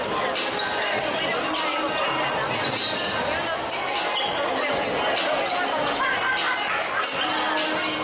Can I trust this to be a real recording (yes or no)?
yes